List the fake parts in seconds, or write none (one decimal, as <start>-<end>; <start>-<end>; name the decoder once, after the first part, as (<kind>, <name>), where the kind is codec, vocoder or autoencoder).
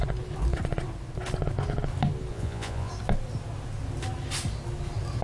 2.3-2.9 (vocoder, Vocos)